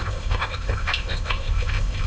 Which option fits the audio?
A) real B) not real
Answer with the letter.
B